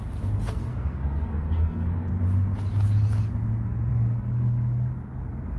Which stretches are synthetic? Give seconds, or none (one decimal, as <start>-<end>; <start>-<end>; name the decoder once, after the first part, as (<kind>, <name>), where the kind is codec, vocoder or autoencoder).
0.0-2.1 (codec, SNAC); 3.9-5.6